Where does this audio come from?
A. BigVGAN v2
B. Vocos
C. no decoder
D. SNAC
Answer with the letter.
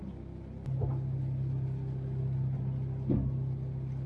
C